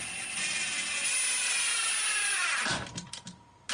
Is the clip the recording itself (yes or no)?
yes